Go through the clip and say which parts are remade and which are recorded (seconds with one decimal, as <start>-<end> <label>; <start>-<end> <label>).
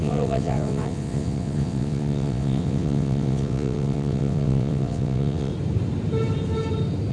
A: 0.0-5.5 remade; 5.5-7.1 recorded